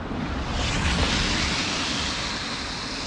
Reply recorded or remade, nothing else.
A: recorded